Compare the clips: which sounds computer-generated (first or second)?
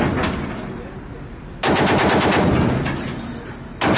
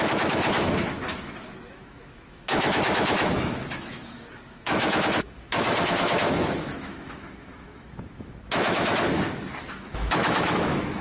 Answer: second